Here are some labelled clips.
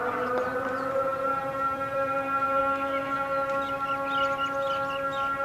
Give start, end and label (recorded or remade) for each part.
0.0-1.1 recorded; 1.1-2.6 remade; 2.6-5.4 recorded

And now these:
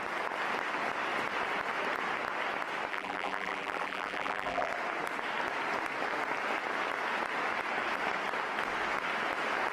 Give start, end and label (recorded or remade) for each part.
0.0-2.9 recorded; 2.9-4.7 remade; 4.7-9.7 recorded

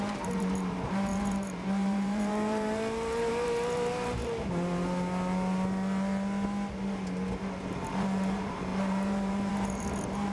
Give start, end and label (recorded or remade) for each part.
0.0-4.2 remade; 4.2-7.7 recorded; 7.7-10.3 remade

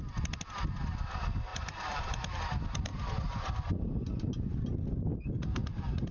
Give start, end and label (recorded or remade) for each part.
0.0-1.5 recorded; 1.5-2.4 remade; 2.4-2.9 recorded; 2.9-3.5 remade; 3.5-5.1 recorded; 5.1-6.1 remade

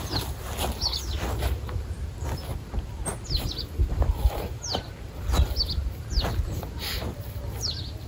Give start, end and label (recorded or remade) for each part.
0.0-2.5 remade; 2.5-6.2 recorded; 6.2-8.1 remade